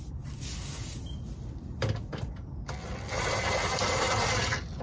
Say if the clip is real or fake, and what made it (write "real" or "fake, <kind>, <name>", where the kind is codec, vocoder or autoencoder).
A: fake, vocoder, BigVGAN v2